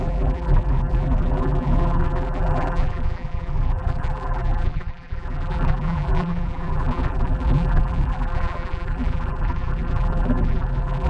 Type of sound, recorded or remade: remade